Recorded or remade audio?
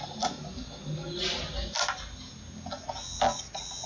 recorded